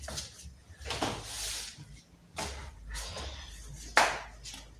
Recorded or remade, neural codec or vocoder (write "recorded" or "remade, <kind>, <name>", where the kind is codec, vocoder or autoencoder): recorded